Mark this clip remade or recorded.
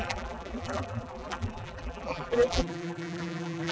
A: remade